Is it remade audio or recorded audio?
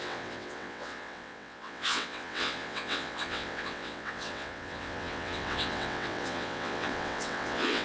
remade